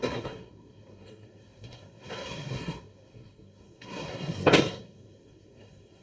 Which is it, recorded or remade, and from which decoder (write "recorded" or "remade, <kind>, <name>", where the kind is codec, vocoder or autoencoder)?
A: remade, codec, SNAC